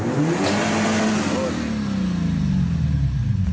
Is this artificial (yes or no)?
no